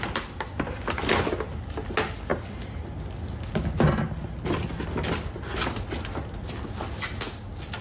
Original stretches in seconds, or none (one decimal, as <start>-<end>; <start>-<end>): 0.0-7.8

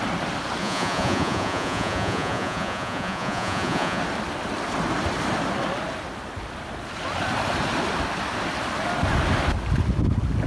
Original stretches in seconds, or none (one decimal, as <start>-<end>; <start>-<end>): 0.0-0.6; 4.0-10.5

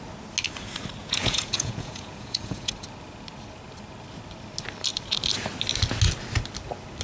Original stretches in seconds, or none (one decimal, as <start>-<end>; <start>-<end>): 0.0-1.0; 2.7-7.0

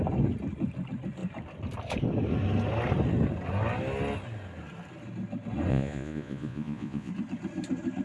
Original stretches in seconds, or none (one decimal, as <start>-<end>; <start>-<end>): 0.0-5.7; 7.1-8.0

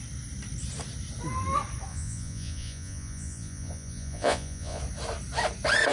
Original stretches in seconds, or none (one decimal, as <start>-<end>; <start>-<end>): 0.0-1.9; 4.8-5.9

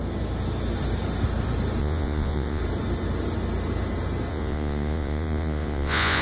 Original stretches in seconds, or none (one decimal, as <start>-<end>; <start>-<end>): 0.0-1.8; 2.6-4.3

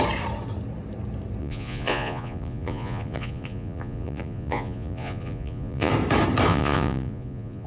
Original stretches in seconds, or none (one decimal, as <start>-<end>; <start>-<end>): 0.0-1.4; 5.9-6.5